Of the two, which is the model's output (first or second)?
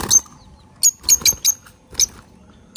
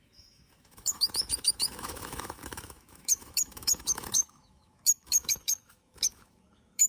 second